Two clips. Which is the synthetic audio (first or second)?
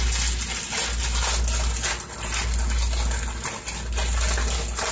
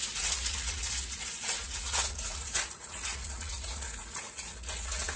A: second